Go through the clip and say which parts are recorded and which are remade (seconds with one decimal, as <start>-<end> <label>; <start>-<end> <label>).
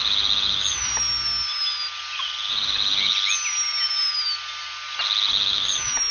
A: 0.0-0.9 remade; 0.9-2.5 recorded; 2.5-3.1 remade; 3.1-5.3 recorded; 5.3-6.1 remade